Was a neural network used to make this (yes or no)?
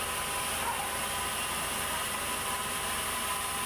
no